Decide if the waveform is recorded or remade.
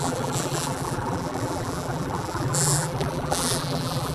remade